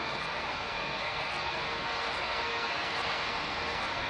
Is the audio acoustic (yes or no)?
no